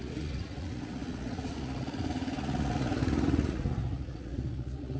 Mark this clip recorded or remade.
remade